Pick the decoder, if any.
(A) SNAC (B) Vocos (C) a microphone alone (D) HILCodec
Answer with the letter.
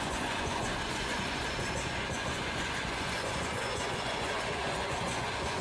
B